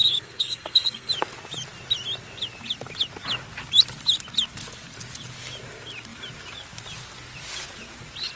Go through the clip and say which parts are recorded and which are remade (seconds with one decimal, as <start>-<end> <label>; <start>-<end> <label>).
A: 0.0-1.1 remade; 1.1-8.4 recorded